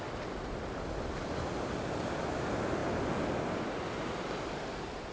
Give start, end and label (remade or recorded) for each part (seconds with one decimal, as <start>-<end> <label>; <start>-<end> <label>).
0.0-5.1 recorded